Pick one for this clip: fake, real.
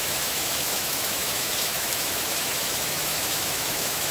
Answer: fake